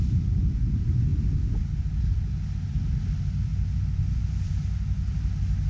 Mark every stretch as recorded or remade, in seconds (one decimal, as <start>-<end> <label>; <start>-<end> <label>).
0.0-5.7 recorded